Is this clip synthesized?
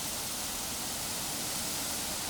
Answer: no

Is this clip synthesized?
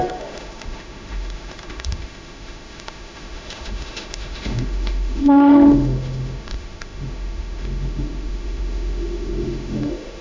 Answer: yes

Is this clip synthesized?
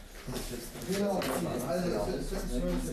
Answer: no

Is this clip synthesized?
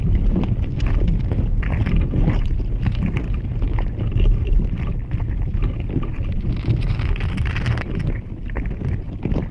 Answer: no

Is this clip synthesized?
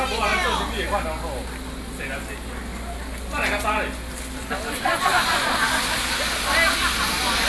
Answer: no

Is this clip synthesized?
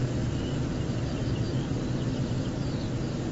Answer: no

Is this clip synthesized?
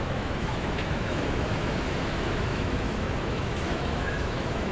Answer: yes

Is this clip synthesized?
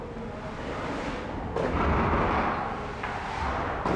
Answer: no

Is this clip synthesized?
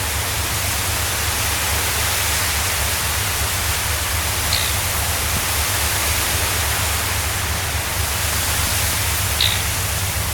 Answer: no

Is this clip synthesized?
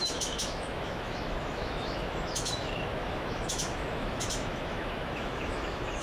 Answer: yes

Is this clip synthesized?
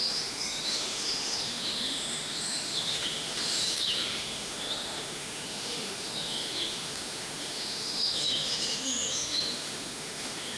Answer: yes